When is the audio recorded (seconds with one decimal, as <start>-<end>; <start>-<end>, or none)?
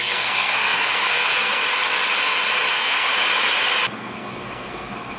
1.6-2.7; 3.1-3.9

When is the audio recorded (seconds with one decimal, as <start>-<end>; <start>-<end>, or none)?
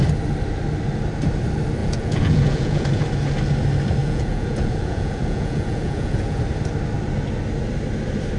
0.0-1.8; 3.0-4.0; 6.4-8.4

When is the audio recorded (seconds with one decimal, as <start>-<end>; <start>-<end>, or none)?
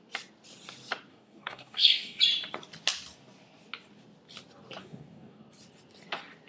0.0-1.1; 2.2-4.8; 5.4-6.5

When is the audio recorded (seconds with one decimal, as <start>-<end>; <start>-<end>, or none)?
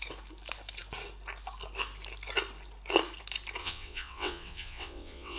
0.0-3.6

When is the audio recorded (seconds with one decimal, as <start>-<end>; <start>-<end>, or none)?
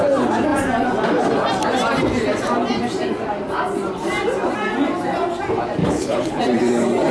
0.0-5.8; 6.4-7.1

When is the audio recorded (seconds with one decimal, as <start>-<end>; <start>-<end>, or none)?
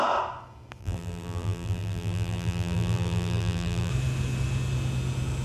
0.0-0.8; 3.9-5.4